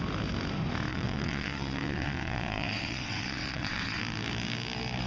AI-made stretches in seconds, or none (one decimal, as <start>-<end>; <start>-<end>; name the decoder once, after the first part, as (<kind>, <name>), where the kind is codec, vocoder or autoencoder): 0.9-4.0 (vocoder, WaveNeXt)